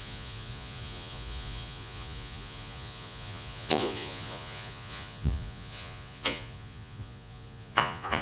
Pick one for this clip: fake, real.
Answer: fake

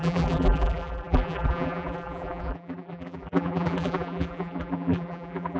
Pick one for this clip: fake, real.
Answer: fake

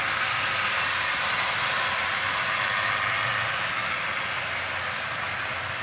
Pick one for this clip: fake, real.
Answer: real